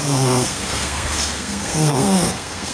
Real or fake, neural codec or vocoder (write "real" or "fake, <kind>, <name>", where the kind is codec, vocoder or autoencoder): fake, codec, SNAC